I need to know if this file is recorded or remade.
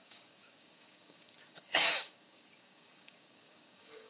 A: remade